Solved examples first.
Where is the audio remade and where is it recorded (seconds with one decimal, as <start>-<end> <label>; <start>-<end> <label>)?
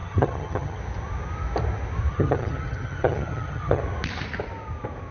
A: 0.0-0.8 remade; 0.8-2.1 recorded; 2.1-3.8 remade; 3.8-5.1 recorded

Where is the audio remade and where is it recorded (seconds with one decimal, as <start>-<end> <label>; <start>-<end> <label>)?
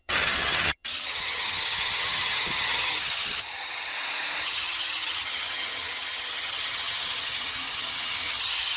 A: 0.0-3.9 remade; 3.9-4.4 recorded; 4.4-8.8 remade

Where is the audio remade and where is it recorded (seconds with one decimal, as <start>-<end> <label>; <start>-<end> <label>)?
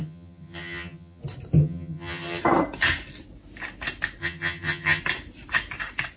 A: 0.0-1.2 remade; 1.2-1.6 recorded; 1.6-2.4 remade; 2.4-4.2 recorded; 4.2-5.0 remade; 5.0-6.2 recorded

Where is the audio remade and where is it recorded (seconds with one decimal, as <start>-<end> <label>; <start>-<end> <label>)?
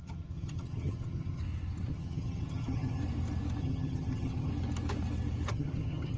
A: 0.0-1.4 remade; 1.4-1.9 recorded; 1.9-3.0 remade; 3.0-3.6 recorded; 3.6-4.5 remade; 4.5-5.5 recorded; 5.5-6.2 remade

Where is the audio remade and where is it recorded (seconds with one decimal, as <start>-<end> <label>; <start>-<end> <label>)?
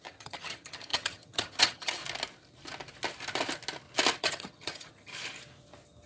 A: 0.0-2.0 remade; 2.0-4.2 recorded; 4.2-5.1 remade; 5.1-6.1 recorded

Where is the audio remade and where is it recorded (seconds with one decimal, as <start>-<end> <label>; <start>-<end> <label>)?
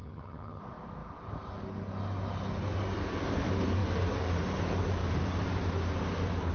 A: 0.0-0.6 remade; 0.6-6.5 recorded